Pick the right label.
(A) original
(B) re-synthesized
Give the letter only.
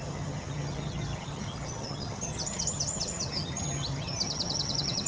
B